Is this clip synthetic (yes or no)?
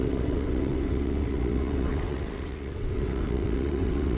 yes